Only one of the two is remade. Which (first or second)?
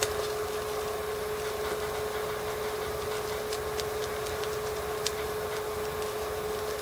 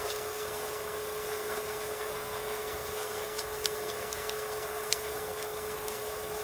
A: second